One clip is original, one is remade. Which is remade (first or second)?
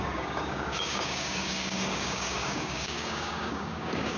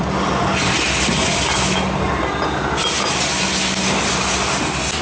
first